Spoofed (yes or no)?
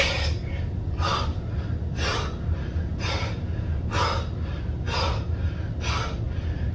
no